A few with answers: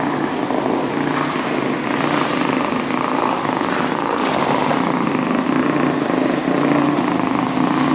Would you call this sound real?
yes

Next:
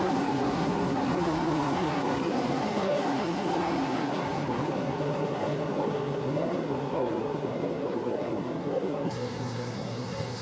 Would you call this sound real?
no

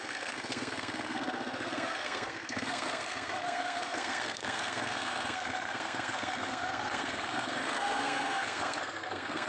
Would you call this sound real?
no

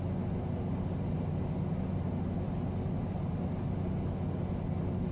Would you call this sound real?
yes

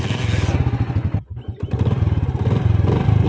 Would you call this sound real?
yes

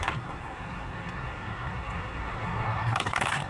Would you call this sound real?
no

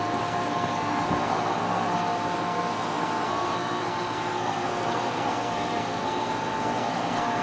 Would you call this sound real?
no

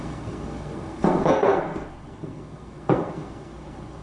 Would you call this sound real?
no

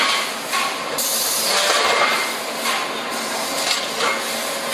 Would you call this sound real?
yes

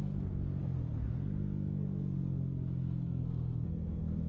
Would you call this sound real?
no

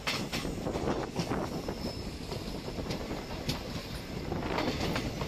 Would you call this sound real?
yes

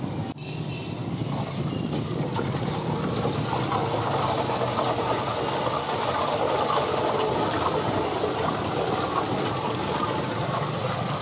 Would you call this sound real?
yes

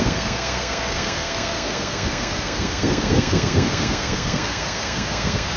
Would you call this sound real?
no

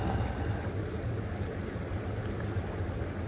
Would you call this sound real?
yes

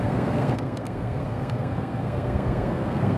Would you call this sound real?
no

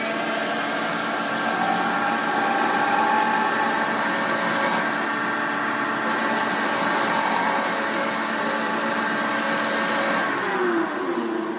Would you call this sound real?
yes